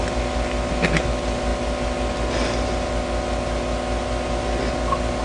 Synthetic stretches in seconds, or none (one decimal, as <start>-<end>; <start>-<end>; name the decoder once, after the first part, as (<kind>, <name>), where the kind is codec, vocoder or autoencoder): none

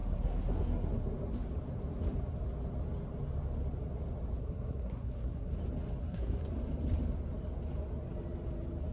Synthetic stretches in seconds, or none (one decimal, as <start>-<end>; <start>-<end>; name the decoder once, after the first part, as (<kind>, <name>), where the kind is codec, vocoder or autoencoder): 0.0-0.9 (codec, SNAC); 4.4-5.6; 6.0-6.5

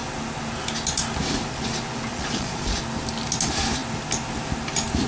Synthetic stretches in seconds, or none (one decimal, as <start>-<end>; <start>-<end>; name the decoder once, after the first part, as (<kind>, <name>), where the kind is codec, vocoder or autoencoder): 2.1-2.8 (vocoder, Vocos)